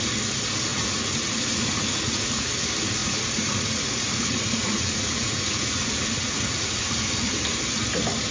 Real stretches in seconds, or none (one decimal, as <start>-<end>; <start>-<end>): 0.0-0.7; 2.5-3.0; 6.9-8.3

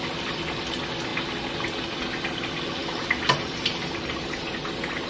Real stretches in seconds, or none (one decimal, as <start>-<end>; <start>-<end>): 0.0-2.8; 4.6-5.1

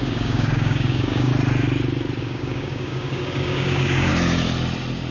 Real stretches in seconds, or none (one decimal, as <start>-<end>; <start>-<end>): 1.3-2.2; 4.1-5.1

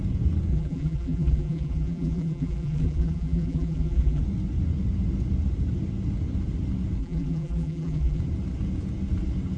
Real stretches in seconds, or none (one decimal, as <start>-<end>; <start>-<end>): 0.0-0.5; 4.2-7.0; 8.2-9.6

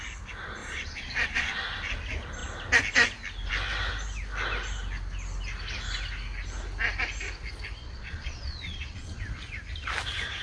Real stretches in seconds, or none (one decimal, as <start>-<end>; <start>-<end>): 0.0-0.6; 1.6-7.8; 9.2-10.4

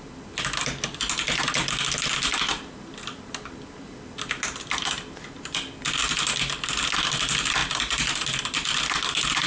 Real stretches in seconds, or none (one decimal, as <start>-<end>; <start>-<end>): 0.0-9.5

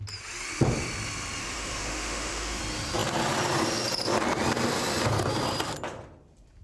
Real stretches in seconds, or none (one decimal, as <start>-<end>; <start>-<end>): 0.0-1.4; 2.6-6.6